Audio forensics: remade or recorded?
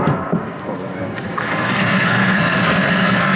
remade